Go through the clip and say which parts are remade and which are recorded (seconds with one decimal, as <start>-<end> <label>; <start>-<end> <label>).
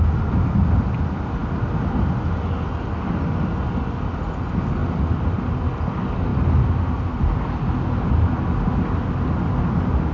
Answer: 0.0-10.1 recorded